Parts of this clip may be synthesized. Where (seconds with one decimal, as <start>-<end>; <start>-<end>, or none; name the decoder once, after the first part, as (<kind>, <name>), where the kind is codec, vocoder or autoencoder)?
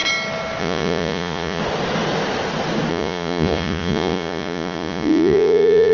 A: 0.6-1.6 (vocoder, Vocos); 2.9-5.9